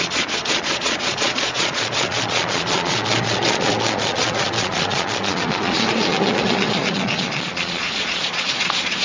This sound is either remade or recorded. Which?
remade